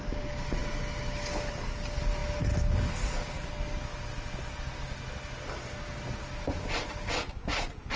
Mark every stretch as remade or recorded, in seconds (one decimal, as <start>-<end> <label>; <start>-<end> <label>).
0.0-8.0 recorded